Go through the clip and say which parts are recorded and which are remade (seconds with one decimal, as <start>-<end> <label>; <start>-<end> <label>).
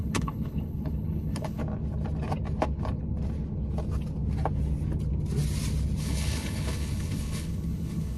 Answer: 0.0-1.6 remade; 1.6-6.0 recorded; 6.0-8.2 remade